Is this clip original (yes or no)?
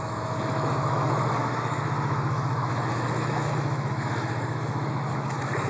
no